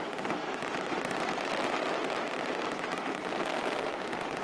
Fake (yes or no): no